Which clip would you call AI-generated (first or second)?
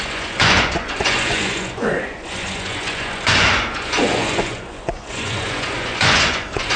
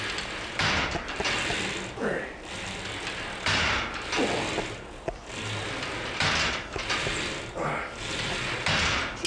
first